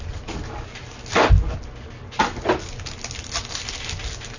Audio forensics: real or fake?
real